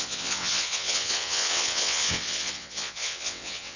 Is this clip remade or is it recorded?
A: remade